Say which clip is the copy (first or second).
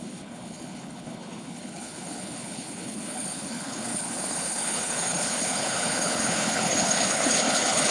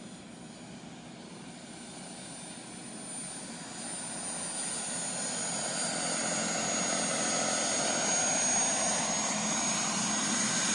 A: first